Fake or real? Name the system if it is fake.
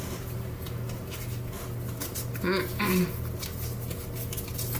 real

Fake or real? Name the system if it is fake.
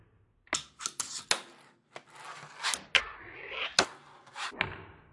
real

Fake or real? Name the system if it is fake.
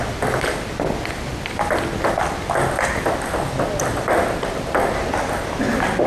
real